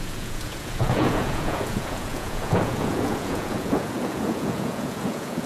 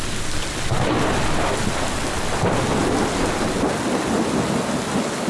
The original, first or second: second